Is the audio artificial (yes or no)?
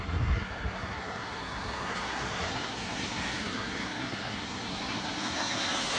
yes